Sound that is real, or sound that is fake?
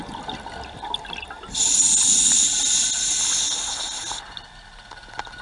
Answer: real